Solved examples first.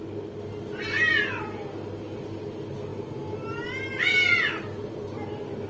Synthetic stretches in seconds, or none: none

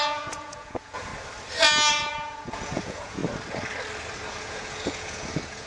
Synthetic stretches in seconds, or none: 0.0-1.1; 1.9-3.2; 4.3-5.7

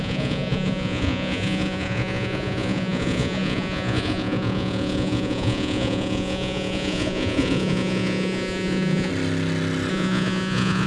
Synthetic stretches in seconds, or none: 0.0-9.1; 9.9-10.9